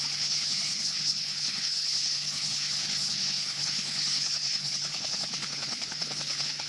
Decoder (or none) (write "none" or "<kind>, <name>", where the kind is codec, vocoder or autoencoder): codec, HILCodec